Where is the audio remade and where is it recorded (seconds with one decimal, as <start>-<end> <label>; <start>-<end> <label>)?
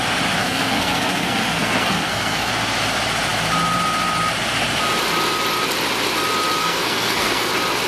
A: 0.0-0.4 recorded; 0.4-2.5 remade; 2.5-6.6 recorded; 6.6-7.5 remade; 7.5-7.9 recorded